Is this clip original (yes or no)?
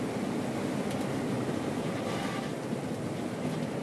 yes